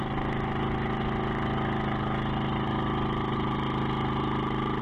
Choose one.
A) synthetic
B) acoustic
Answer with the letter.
B